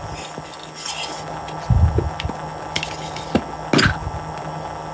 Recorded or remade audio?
recorded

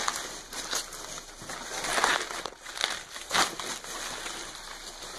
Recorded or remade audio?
remade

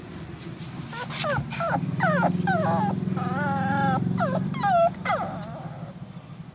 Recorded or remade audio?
recorded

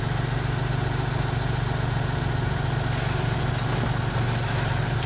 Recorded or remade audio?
recorded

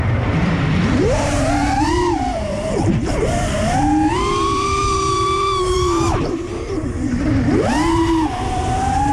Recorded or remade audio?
remade